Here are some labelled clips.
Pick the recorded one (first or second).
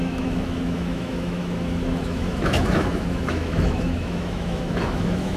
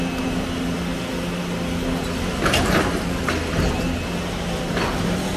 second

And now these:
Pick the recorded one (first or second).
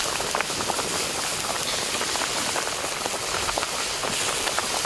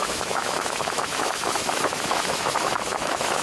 first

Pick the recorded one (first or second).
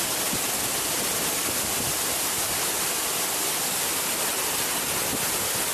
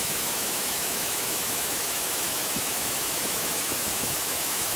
first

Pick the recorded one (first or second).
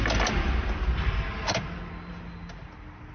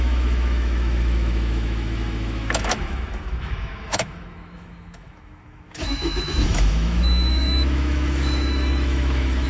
first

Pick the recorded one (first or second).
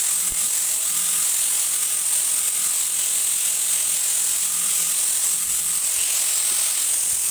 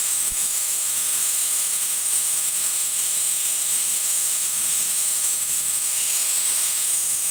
first